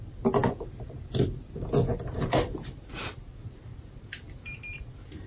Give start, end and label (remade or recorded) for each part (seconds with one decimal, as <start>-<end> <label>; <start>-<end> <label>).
0.0-5.3 recorded